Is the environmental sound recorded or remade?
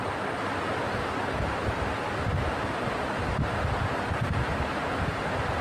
recorded